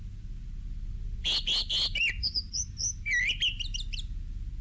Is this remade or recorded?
recorded